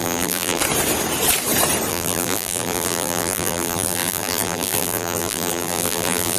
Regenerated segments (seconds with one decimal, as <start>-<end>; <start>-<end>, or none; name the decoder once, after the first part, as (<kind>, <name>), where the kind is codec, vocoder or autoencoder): 0.0-0.6 (vocoder, BigVGAN v2); 1.9-6.4